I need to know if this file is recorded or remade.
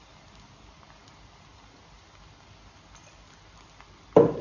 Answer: recorded